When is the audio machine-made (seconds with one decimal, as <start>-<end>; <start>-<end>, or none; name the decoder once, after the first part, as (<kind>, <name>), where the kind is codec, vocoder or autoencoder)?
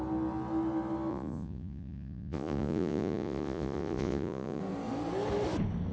1.1-4.6 (vocoder, Vocos)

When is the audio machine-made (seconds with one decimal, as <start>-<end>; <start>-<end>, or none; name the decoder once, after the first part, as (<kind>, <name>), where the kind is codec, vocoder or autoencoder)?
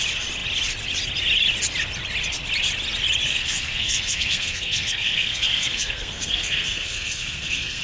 3.3-7.8 (codec, SNAC)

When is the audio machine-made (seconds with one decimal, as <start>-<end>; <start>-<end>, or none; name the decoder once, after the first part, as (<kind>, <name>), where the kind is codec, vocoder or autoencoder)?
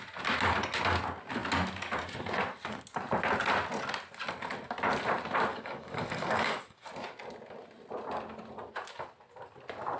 5.5-6.9 (codec, DAC)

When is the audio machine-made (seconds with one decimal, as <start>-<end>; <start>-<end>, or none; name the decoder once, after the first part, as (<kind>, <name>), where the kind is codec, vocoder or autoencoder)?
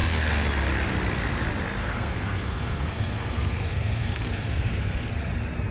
1.8-5.1 (codec, SNAC)